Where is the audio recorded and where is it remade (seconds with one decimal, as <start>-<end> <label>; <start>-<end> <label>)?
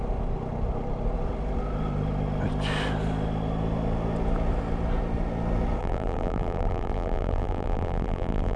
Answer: 0.0-5.8 recorded; 5.8-8.6 remade